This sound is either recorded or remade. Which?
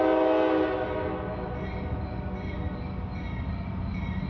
recorded